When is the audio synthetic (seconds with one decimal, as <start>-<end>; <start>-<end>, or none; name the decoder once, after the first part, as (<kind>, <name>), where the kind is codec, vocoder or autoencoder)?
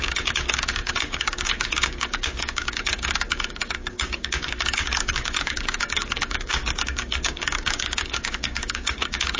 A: 0.0-9.4 (codec, DAC)